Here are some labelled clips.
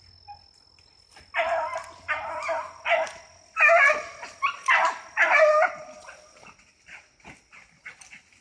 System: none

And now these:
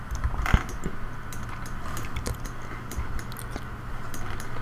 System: none